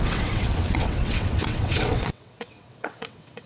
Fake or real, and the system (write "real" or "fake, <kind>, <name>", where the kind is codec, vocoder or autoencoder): fake, vocoder, WaveNeXt